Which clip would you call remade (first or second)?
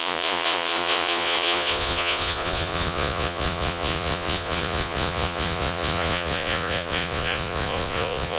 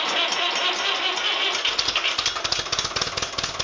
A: first